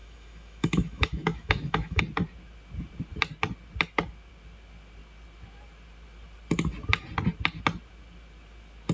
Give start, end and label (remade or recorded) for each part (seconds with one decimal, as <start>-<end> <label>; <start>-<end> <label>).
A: 0.0-2.0 remade; 2.0-8.9 recorded